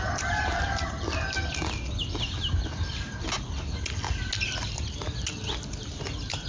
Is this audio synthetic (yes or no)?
no